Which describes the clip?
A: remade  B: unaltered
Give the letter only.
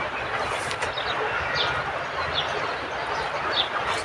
B